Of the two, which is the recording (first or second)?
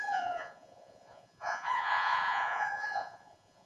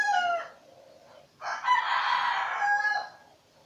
second